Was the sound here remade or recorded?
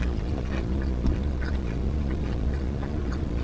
remade